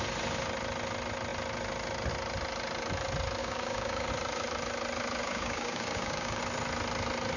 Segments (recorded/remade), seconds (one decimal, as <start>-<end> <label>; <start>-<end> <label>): 0.0-3.4 recorded; 3.4-4.1 remade; 4.1-5.2 recorded; 5.2-6.4 remade; 6.4-7.4 recorded

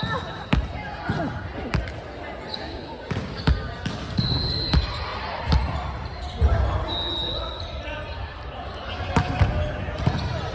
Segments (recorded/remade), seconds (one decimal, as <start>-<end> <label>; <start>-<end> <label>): 0.0-2.5 recorded; 2.5-3.4 remade; 3.4-10.5 recorded

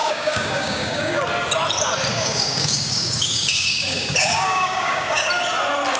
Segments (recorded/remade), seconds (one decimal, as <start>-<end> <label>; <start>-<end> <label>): 0.0-1.2 remade; 1.2-2.1 recorded; 2.1-5.3 remade; 5.3-6.0 recorded

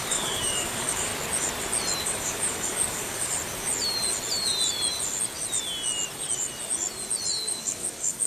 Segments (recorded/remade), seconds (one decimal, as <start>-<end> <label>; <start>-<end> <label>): 0.0-1.1 remade; 1.1-2.0 recorded; 2.0-3.3 remade; 3.3-7.5 recorded; 7.5-8.3 remade